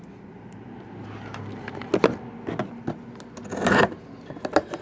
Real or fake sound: real